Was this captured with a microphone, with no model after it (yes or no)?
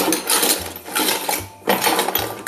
yes